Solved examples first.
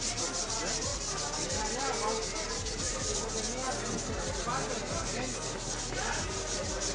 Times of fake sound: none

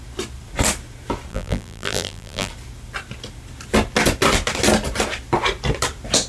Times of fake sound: 1.3-2.5 (vocoder, BigVGAN v2)